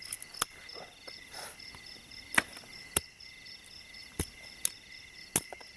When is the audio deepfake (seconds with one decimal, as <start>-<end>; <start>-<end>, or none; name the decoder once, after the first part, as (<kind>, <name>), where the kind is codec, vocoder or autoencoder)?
none